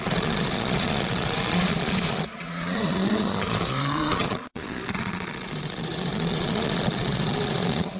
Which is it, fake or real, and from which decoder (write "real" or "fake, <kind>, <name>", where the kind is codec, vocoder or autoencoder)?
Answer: fake, vocoder, Vocos